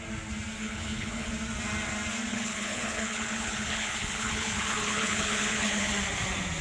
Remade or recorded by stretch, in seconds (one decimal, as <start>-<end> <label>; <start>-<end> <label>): 0.0-0.6 recorded; 0.6-1.3 remade; 1.3-2.3 recorded; 2.3-5.9 remade; 5.9-6.6 recorded